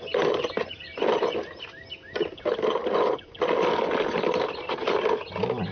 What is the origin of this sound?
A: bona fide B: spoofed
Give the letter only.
A